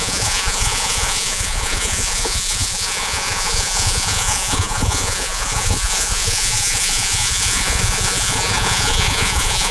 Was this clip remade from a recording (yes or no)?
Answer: yes